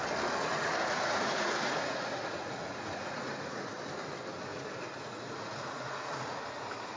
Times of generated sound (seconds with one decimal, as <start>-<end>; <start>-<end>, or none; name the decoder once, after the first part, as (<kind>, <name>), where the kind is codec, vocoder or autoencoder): 0.4-3.7 (vocoder, Vocos); 4.5-6.4